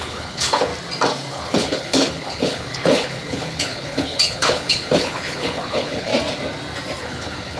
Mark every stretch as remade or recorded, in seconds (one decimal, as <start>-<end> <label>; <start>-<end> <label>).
0.0-0.7 remade; 0.7-1.3 recorded; 1.3-6.1 remade; 6.1-7.0 recorded; 7.0-7.6 remade